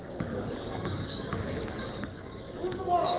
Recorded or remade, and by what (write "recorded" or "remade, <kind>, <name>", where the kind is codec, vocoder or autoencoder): remade, codec, DAC